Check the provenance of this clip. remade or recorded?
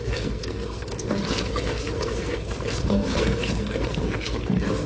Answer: remade